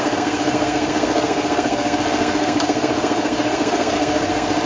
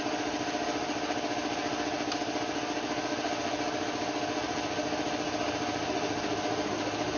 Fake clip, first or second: first